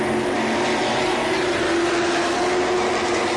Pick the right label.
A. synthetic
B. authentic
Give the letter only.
B